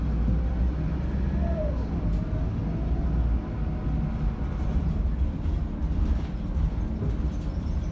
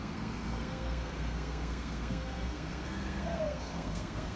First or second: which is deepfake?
second